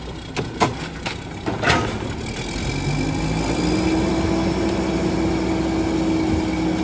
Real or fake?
real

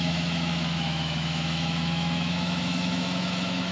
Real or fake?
fake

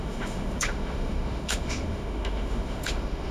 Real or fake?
fake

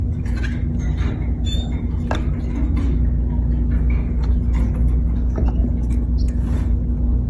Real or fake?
real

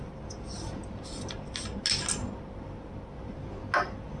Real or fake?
real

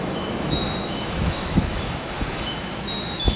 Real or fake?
fake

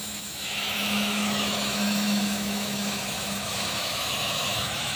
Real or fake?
fake